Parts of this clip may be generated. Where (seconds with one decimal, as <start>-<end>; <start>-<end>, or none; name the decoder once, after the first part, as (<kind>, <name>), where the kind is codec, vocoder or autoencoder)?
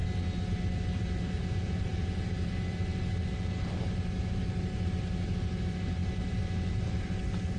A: none